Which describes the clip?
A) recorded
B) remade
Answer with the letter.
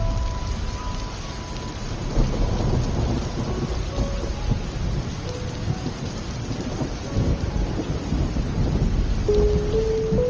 A